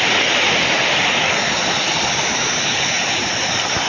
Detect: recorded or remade recorded